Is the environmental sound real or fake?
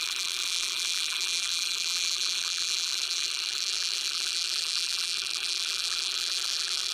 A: fake